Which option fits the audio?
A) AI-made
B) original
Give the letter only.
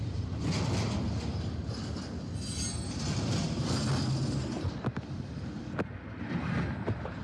B